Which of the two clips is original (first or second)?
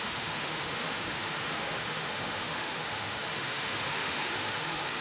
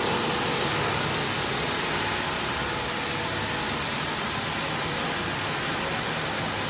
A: second